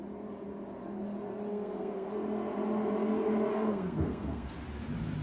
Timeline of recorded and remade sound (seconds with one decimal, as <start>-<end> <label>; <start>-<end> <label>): 0.0-1.5 recorded; 1.5-2.1 remade; 2.1-3.5 recorded; 3.5-4.5 remade; 4.5-5.2 recorded

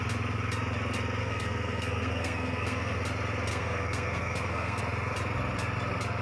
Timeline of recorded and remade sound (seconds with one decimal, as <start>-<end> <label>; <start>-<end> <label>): 0.0-1.2 recorded; 1.2-3.0 remade; 3.0-3.5 recorded; 3.5-4.8 remade; 4.8-6.2 recorded

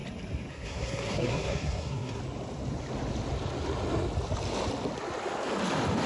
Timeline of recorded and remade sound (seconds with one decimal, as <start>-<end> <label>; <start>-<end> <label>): 0.0-0.5 recorded; 0.5-2.2 remade; 2.2-6.1 recorded

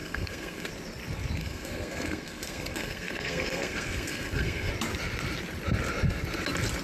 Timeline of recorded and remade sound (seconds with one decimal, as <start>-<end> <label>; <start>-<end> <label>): 0.0-0.7 remade; 0.7-1.4 recorded; 1.4-4.7 remade; 4.7-6.8 recorded

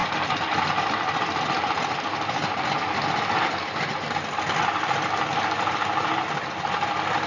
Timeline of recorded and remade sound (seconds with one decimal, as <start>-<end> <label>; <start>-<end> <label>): 0.0-7.3 recorded

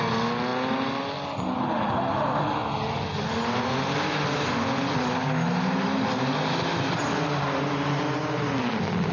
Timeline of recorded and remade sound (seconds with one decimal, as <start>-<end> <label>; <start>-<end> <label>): 0.0-9.1 recorded